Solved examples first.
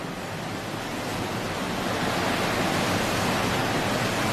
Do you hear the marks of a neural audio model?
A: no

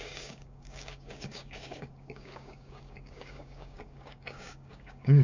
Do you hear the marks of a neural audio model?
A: yes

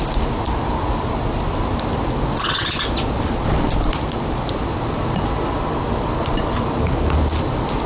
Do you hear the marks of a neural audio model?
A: no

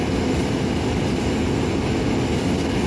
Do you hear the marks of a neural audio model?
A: no